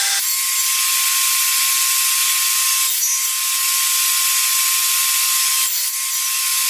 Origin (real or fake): real